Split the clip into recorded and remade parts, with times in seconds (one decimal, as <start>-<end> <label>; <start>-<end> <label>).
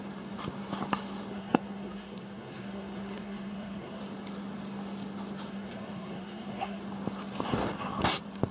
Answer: 0.0-1.3 recorded; 1.3-4.0 remade; 4.0-5.5 recorded; 5.5-6.8 remade; 6.8-8.5 recorded